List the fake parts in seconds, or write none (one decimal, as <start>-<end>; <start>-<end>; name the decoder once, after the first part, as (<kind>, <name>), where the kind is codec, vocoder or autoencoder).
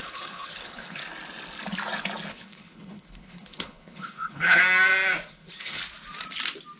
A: 0.0-1.0 (codec, HILCodec); 2.3-4.6; 5.3-5.8